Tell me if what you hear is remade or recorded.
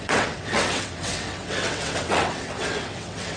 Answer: remade